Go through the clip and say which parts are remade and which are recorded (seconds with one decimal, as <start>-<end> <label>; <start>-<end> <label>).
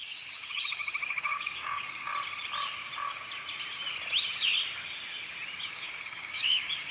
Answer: 0.0-2.1 remade; 2.1-5.7 recorded; 5.7-6.9 remade